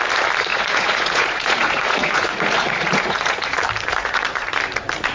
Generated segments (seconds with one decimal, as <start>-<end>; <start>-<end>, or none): 0.5-3.6; 4.0-4.5